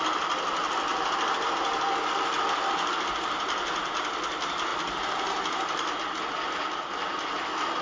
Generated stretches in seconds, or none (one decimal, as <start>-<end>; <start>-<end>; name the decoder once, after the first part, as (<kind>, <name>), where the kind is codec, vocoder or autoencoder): none